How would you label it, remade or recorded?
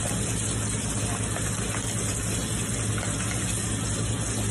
recorded